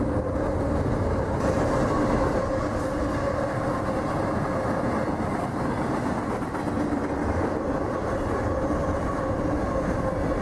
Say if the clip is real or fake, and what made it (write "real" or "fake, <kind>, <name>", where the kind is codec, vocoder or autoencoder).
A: real